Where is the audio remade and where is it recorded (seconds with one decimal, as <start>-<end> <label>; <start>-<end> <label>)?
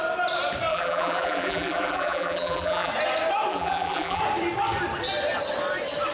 0.0-0.7 recorded; 0.7-2.9 remade; 2.9-3.5 recorded; 3.5-4.2 remade; 4.2-6.1 recorded